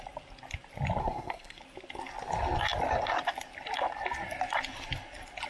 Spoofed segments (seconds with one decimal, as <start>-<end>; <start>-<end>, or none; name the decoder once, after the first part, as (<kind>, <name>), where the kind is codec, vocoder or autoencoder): 1.0-1.6 (codec, SNAC)